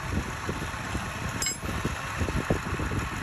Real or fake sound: real